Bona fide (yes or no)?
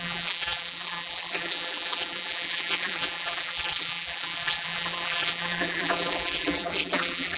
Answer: no